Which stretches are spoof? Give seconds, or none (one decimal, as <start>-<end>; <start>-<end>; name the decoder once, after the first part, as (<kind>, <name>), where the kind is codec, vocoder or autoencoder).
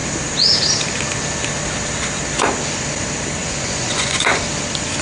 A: 3.4-4.4 (vocoder, Vocos)